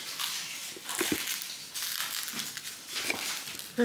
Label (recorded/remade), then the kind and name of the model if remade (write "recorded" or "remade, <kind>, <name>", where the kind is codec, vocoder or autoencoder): recorded